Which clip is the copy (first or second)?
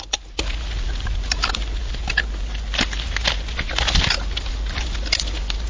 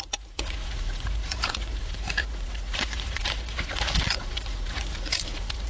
second